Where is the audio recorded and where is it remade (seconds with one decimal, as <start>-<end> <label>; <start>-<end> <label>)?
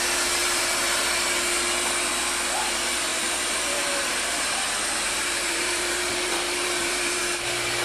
0.0-0.4 recorded; 0.4-1.0 remade; 1.0-3.1 recorded; 3.1-7.2 remade; 7.2-7.8 recorded